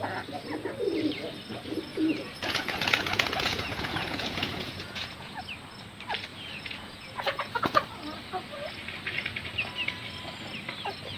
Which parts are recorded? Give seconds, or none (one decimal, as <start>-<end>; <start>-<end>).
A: 0.0-1.9; 5.4-6.3; 7.6-11.2